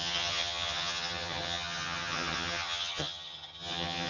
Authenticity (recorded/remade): remade